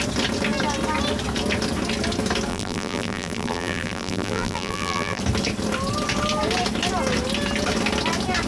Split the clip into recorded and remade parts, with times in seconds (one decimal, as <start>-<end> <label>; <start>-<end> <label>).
0.0-2.5 recorded; 2.5-5.2 remade; 5.2-8.5 recorded